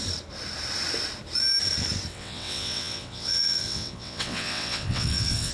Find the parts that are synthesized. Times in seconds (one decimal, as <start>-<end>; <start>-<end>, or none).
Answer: 2.1-5.5